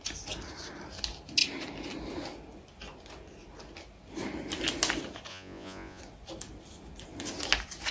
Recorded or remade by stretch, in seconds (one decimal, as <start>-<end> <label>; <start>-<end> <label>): 0.0-5.3 recorded; 5.3-6.0 remade; 6.0-7.9 recorded